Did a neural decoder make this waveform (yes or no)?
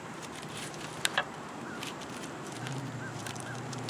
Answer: yes